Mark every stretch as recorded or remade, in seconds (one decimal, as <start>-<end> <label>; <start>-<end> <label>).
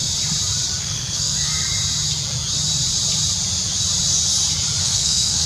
0.0-0.8 recorded; 0.8-1.5 remade; 1.5-4.8 recorded; 4.8-5.5 remade